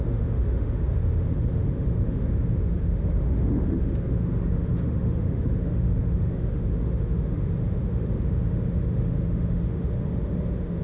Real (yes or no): no